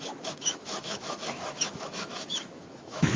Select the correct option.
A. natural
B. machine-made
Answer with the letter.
B